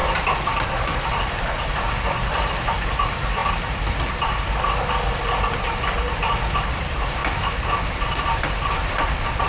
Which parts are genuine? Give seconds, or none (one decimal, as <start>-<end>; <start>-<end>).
7.2-8.6